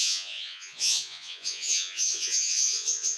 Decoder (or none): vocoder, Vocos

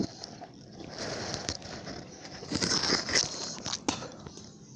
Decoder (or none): none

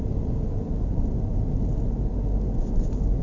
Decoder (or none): none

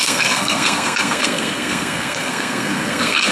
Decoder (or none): codec, SNAC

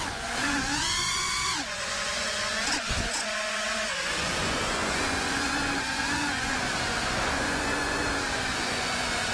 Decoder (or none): vocoder, Vocos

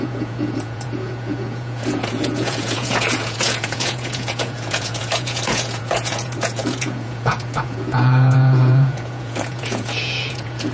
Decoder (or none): vocoder, Vocos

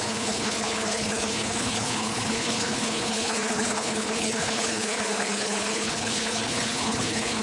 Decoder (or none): codec, HILCodec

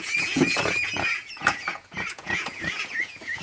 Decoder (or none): vocoder, Vocos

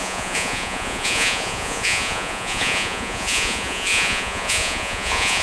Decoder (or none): vocoder, Vocos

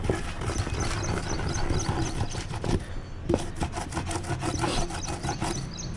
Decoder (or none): none